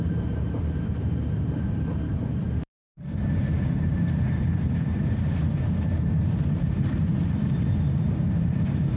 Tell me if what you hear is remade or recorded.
remade